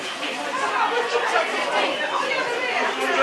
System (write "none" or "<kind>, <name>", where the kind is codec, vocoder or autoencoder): none